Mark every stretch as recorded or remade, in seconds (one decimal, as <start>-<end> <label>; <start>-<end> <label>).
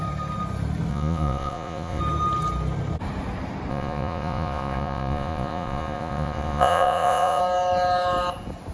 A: 0.0-0.9 recorded; 0.9-2.0 remade; 2.0-3.7 recorded; 3.7-7.4 remade; 7.4-8.7 recorded